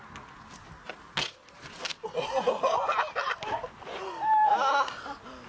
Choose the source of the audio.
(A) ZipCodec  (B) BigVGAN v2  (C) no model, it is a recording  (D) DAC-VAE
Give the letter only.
C